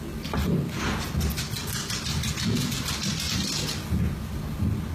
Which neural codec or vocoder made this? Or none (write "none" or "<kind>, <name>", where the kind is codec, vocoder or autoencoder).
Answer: none